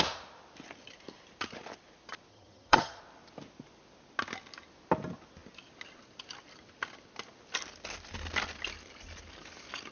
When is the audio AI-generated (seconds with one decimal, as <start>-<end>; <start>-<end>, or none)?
2.3-3.0